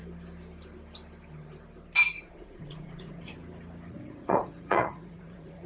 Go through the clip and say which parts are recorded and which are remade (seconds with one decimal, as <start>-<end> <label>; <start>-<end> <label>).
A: 0.0-2.0 recorded; 2.0-3.3 remade; 3.3-3.9 recorded; 3.9-5.7 remade